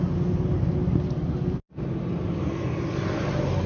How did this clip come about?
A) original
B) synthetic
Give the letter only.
A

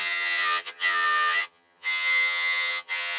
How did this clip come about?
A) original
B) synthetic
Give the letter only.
B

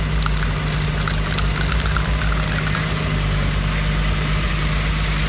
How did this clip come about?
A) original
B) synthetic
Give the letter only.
A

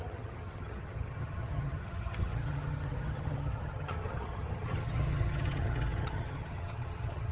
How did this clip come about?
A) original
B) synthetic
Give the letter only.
B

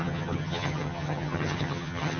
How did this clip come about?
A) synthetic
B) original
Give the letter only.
A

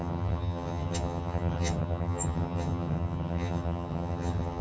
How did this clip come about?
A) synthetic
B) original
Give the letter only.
A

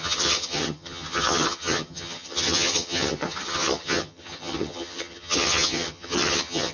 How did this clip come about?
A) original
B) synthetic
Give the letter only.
B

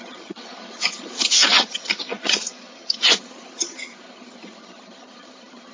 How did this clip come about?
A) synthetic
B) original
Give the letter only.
A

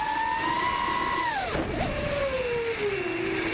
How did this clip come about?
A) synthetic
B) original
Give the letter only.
B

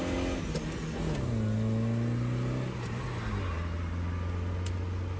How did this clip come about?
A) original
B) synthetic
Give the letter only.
A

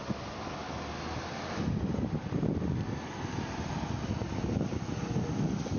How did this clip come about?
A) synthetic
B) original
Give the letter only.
B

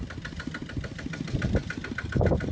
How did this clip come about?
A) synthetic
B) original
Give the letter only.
B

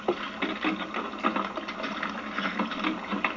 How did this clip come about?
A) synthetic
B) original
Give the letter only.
B